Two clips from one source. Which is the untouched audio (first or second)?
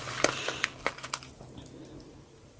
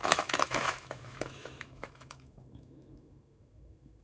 first